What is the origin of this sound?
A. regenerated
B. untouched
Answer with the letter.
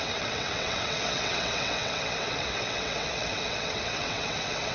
A